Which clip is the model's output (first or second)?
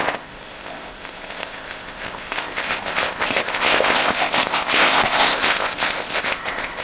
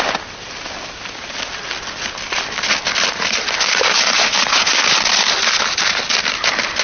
first